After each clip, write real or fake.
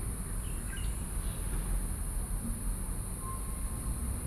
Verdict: real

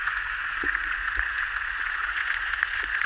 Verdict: fake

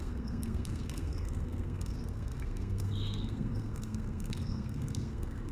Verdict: fake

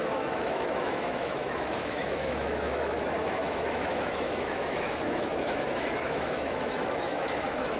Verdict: fake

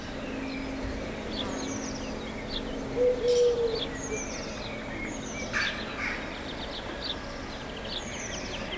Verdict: real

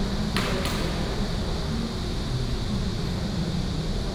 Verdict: real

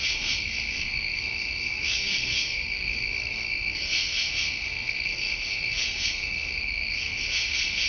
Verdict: fake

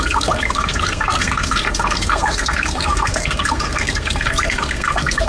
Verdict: fake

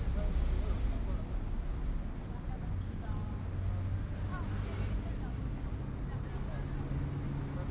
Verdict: real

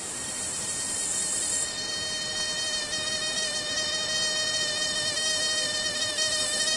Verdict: fake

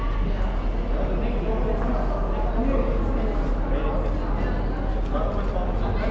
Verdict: real